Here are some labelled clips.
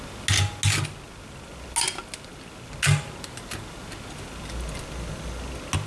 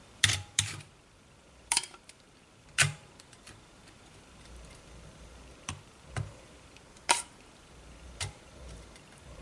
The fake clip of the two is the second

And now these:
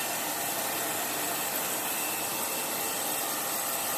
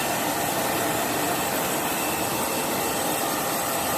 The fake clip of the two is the second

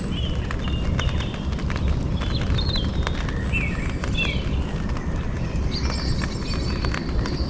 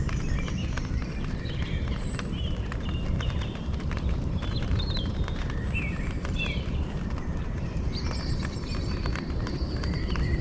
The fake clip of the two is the second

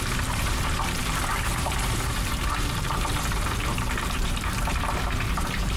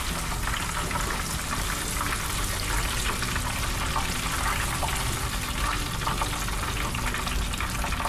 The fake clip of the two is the first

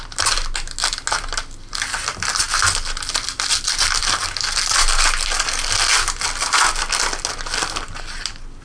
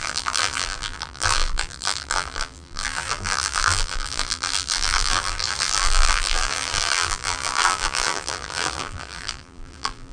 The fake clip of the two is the second